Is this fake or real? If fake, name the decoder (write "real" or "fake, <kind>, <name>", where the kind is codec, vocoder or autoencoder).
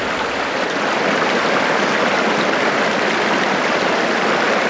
fake, vocoder, BigVGAN v2